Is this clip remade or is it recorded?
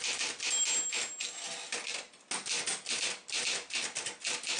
recorded